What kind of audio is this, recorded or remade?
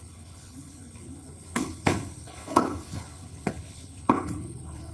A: remade